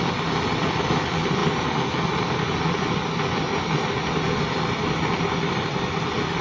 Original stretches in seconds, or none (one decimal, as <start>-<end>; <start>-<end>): 0.0-6.4